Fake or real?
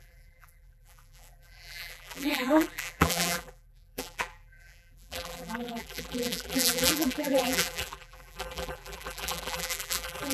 fake